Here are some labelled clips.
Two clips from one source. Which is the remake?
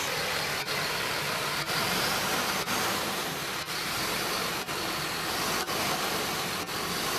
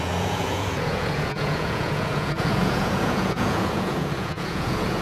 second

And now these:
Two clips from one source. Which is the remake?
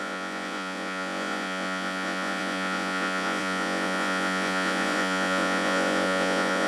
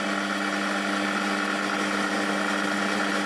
first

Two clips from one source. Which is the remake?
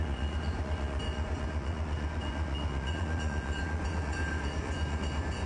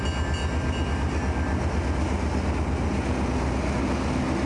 first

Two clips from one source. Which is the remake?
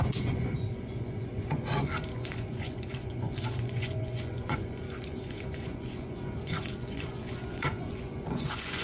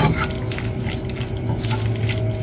first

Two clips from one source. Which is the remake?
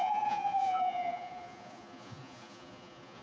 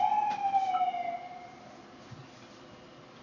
first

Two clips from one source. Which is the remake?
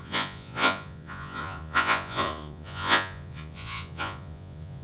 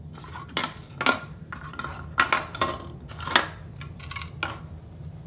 first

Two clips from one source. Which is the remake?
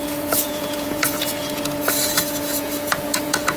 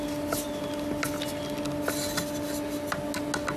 first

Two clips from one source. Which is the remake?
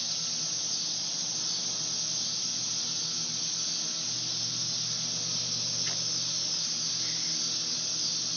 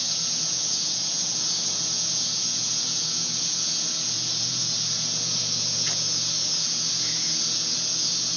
second